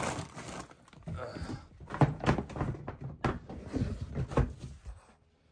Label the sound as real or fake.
real